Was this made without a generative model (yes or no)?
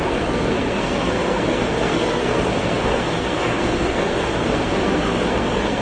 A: no